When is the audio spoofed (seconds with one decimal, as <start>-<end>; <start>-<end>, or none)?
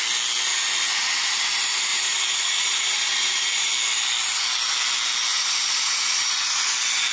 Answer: 1.9-3.7; 5.3-6.2